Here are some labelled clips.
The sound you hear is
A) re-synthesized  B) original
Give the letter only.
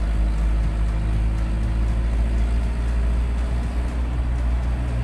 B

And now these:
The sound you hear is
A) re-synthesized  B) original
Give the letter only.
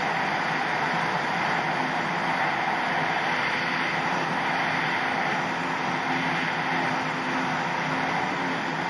B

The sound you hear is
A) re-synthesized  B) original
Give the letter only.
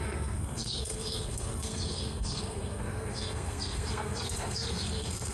A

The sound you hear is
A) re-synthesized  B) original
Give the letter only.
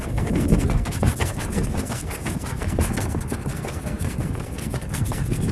A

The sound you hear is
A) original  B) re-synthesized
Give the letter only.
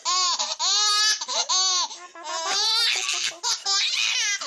A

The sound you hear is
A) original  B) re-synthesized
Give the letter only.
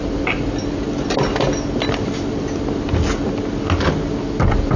A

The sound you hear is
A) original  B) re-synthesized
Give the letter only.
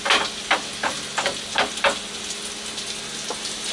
A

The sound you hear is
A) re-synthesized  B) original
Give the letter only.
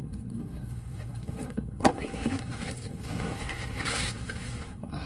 A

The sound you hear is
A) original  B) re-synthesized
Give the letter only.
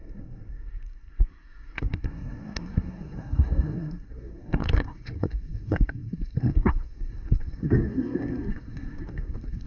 B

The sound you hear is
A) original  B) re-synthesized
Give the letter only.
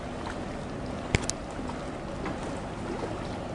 A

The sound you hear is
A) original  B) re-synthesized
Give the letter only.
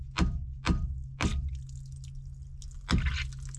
A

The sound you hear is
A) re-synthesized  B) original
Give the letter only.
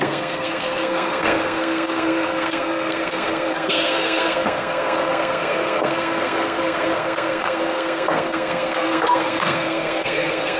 A